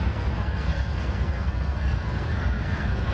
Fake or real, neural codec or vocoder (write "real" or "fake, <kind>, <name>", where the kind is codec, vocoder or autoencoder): fake, codec, SNAC